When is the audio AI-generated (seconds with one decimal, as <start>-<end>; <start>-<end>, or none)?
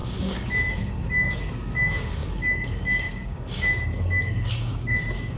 0.0-5.4